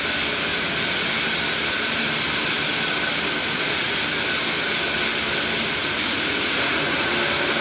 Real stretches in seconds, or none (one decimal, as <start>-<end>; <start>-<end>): 0.0-0.5; 1.1-3.4; 4.0-5.8; 7.1-7.6